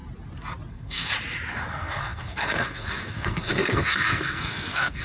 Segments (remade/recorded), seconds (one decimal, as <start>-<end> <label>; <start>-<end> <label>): 0.0-0.7 recorded; 0.7-1.1 remade; 1.1-1.7 recorded; 1.7-5.0 remade